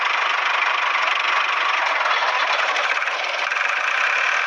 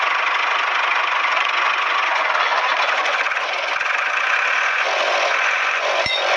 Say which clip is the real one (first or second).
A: first